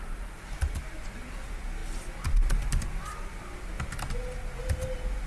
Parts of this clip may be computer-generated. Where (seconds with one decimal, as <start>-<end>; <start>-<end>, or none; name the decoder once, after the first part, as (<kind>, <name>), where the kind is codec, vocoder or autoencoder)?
none